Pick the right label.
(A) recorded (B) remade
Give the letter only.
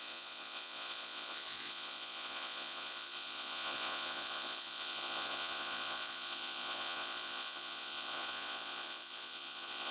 B